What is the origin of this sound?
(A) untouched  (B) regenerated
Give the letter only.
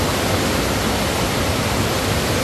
A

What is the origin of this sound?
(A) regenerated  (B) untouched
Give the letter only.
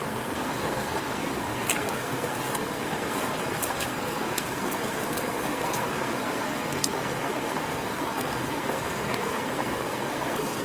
A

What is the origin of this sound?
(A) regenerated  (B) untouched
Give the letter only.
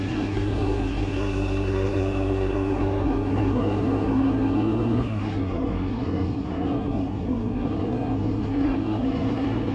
A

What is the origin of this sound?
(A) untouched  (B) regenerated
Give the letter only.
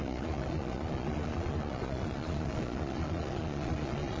B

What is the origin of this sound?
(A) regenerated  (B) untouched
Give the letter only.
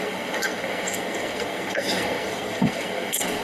A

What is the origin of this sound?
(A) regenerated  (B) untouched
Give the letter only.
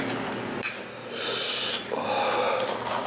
B